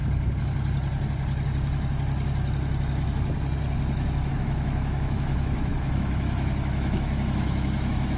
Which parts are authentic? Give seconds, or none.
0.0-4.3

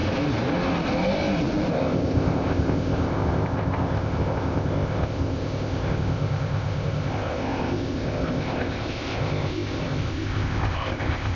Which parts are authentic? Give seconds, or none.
0.0-1.7

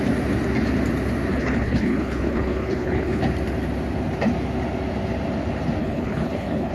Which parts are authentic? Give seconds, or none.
0.0-1.3; 3.2-5.8

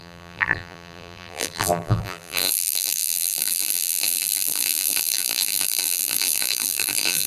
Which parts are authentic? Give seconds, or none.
none

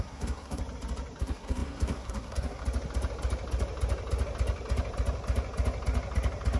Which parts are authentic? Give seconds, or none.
0.6-1.2; 2.6-6.6

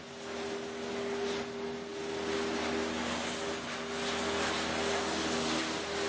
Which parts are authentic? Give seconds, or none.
0.0-6.1